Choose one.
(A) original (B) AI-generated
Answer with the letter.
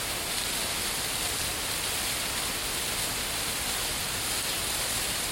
A